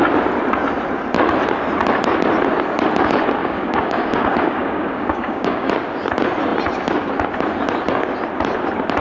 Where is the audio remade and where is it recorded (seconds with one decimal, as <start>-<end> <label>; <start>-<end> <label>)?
0.0-3.4 recorded; 3.4-5.7 remade; 5.7-9.0 recorded

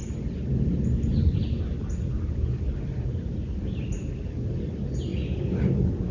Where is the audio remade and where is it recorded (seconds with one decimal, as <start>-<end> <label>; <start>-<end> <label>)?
0.0-6.1 recorded

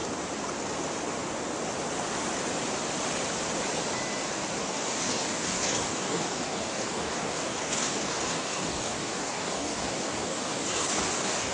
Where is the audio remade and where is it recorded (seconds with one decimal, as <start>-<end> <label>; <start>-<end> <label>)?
0.0-4.6 recorded; 4.6-11.5 remade

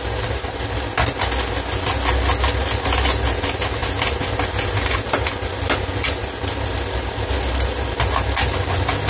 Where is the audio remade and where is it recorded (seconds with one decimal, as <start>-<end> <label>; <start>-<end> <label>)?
0.0-9.1 recorded

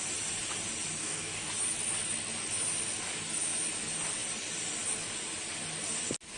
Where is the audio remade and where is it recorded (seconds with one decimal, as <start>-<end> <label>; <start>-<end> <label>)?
0.0-1.0 recorded; 1.0-1.5 remade; 1.5-6.4 recorded

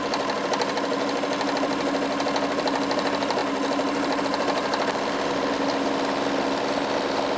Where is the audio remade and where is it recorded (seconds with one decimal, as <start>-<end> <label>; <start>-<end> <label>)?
0.0-7.4 recorded